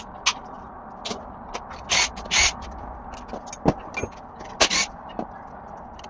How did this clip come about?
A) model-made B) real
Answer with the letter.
B